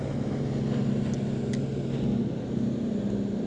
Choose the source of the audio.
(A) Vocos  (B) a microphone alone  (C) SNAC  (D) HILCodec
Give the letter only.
B